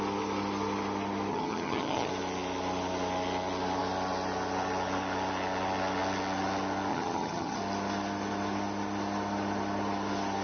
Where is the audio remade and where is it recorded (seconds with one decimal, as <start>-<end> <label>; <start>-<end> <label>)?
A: 0.0-1.3 recorded; 1.3-2.1 remade; 2.1-6.9 recorded; 6.9-7.6 remade; 7.6-10.4 recorded